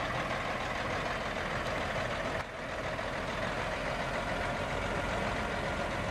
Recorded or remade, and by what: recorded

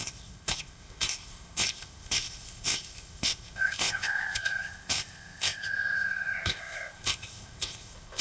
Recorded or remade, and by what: remade, codec, ZipCodec